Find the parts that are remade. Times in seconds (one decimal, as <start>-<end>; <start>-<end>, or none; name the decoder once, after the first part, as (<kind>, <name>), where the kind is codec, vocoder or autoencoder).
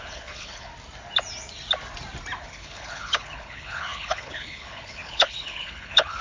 0.0-0.7 (codec, HILCodec); 2.4-6.2